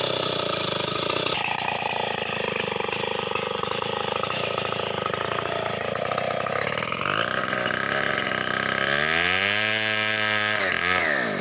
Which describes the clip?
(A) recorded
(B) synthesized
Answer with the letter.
A